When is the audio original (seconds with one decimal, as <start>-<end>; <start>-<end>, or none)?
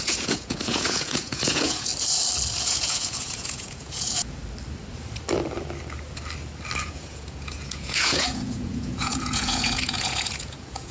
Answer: 1.9-2.5; 4.4-6.8